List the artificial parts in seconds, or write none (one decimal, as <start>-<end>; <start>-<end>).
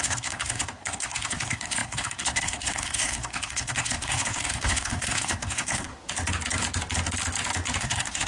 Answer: 0.0-5.9; 7.8-8.3